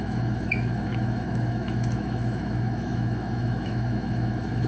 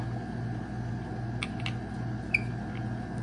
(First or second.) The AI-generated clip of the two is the first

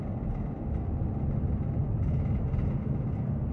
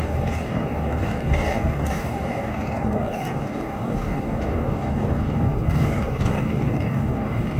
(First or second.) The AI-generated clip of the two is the second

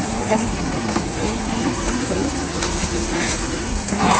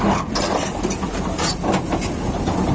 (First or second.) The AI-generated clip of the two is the first